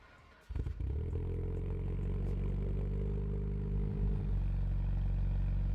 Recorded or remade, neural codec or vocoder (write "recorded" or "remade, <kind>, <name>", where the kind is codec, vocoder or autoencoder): recorded